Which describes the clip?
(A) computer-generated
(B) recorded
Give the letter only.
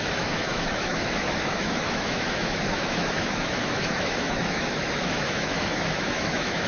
A